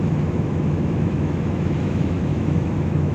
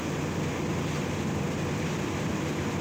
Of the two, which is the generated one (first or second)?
first